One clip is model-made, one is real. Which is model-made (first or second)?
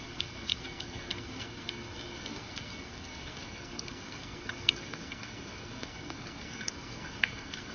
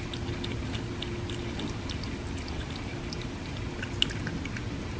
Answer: first